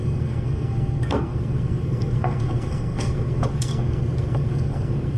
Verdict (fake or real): fake